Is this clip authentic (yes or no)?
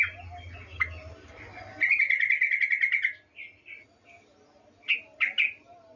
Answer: yes